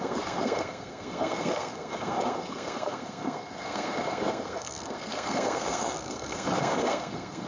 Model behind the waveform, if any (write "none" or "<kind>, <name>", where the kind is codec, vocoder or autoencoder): codec, SNAC